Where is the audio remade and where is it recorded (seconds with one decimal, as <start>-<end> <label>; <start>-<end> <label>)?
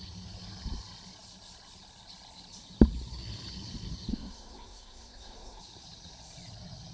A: 0.0-4.1 recorded; 4.1-5.6 remade; 5.6-6.9 recorded